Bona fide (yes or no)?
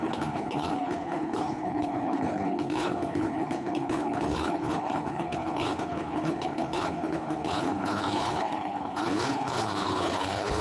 no